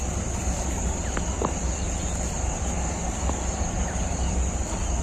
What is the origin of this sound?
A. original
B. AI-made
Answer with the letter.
A